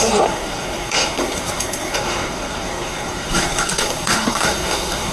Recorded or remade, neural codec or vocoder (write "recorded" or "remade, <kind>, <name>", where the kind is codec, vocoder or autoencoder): remade, codec, SNAC